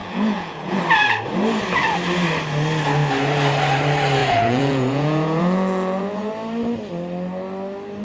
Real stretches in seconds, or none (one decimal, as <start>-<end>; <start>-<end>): 0.8-4.2; 6.3-8.0